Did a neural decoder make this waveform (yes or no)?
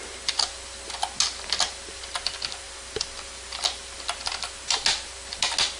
no